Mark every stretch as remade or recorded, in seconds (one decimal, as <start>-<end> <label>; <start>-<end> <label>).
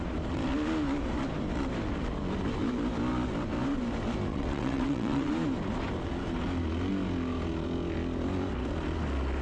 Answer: 0.0-4.3 recorded; 4.3-5.3 remade; 5.3-9.4 recorded